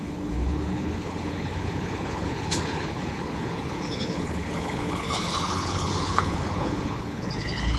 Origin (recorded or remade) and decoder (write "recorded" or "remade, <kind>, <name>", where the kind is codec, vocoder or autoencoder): remade, codec, HILCodec